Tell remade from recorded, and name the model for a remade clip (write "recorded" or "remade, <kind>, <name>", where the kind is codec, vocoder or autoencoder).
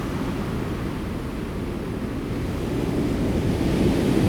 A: recorded